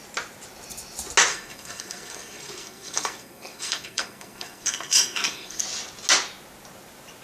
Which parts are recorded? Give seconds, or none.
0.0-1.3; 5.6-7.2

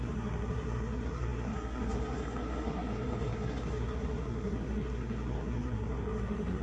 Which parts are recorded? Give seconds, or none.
none

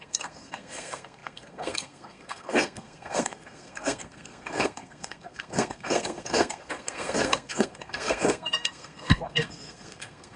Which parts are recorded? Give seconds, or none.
none

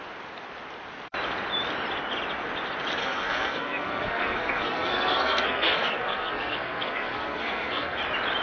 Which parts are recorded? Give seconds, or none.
0.0-3.0; 8.0-8.4

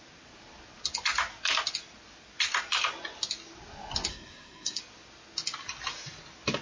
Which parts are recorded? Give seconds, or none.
0.0-4.1; 4.8-6.6

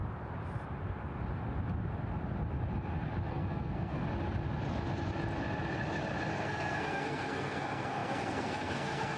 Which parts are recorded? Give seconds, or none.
0.0-3.3; 4.0-6.3